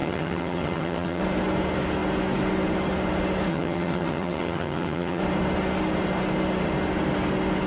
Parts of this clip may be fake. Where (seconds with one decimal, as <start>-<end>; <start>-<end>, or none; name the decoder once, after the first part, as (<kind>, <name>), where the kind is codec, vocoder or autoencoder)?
0.0-1.2 (vocoder, HiFi-GAN); 3.5-5.2